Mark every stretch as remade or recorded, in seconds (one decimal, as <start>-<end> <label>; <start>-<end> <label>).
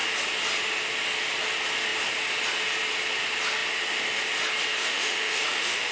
0.0-4.8 recorded; 4.8-5.9 remade